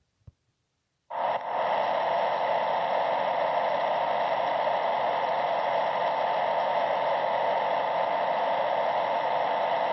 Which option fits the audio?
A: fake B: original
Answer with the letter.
B